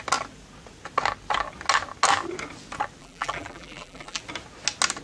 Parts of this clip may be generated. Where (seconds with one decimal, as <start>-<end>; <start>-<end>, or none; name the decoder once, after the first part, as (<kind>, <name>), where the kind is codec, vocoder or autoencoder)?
3.0-4.2 (vocoder, BigVGAN v2)